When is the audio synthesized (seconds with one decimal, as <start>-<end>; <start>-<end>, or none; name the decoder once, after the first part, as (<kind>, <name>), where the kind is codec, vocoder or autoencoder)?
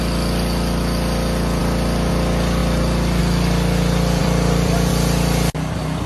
2.6-3.2 (vocoder, BigVGAN v2); 4.2-4.9